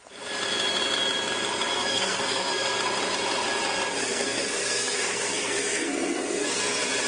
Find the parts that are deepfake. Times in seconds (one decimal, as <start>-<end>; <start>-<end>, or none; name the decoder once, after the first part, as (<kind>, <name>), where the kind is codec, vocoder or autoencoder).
1.7-2.8 (codec, SNAC); 4.0-6.6